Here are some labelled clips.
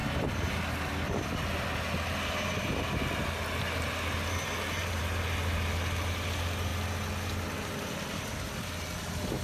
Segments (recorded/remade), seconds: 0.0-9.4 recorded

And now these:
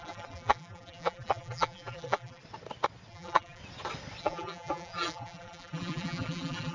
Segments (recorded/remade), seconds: 0.0-2.4 remade; 2.4-3.1 recorded; 3.1-3.6 remade; 3.6-4.2 recorded; 4.2-6.7 remade